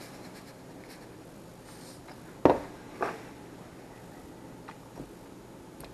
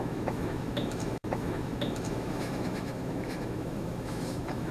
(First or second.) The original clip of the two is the first